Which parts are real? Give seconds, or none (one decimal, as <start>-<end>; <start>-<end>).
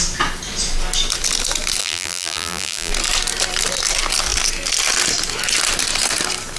0.0-1.8; 2.9-6.6